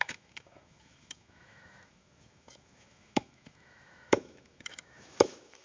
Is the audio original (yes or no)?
no